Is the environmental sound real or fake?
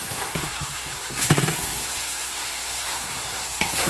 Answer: fake